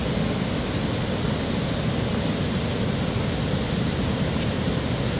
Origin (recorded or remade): recorded